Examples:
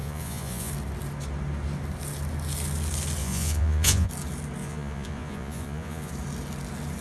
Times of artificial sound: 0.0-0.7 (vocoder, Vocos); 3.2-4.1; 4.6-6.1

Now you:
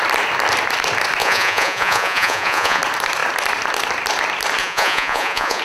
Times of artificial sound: 1.2-2.8 (vocoder, Vocos); 4.6-5.6

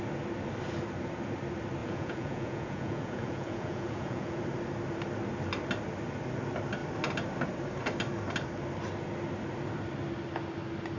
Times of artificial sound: 1.8-4.4 (vocoder, Vocos)